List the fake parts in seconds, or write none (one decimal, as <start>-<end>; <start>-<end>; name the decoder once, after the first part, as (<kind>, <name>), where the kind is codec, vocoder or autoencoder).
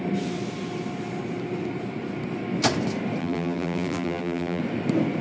3.2-4.6 (vocoder, BigVGAN v2)